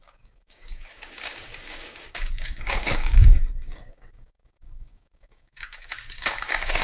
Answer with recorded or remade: remade